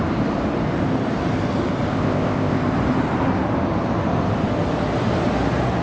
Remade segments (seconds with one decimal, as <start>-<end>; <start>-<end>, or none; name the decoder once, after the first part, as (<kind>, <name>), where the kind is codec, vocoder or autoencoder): 1.9-2.6 (codec, ZipCodec)